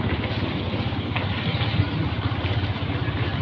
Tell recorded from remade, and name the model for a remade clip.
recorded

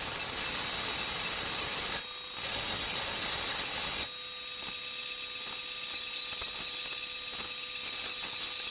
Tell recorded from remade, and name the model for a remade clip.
recorded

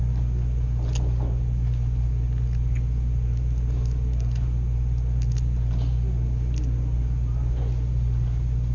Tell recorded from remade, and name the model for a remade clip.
recorded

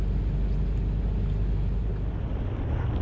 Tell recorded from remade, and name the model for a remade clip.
recorded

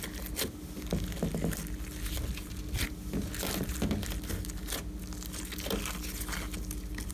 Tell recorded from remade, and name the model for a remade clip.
recorded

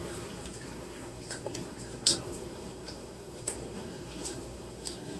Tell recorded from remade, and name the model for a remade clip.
remade, codec, SNAC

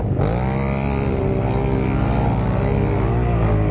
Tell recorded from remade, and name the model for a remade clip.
recorded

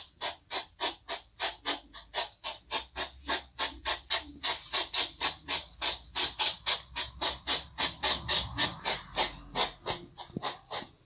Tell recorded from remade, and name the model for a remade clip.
recorded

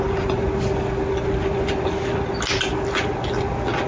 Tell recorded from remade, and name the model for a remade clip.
recorded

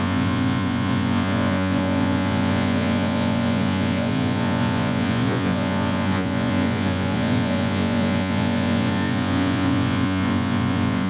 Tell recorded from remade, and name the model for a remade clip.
remade, vocoder, Vocos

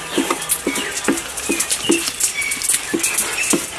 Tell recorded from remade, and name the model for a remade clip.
recorded